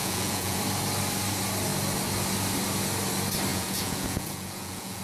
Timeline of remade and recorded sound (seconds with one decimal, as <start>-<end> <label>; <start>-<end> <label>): 0.0-0.6 remade; 0.6-3.5 recorded; 3.5-5.0 remade